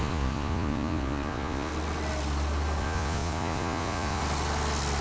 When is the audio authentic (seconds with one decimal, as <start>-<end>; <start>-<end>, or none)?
1.7-2.8; 4.2-5.0

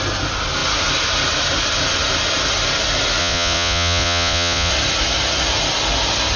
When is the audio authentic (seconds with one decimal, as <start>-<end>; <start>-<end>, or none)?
0.0-3.2; 4.7-6.4

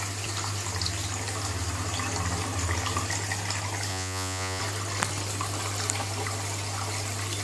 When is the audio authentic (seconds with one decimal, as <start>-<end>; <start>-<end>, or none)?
0.0-3.9; 4.6-7.4

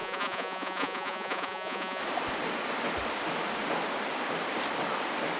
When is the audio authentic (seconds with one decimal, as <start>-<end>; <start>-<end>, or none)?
2.0-5.4